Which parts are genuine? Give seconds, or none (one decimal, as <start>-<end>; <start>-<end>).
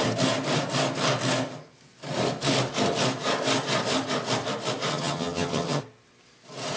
0.0-4.9; 5.8-6.8